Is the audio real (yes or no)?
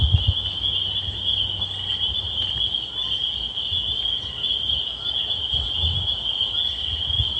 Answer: yes